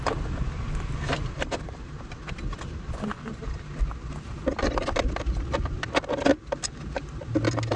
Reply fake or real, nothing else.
real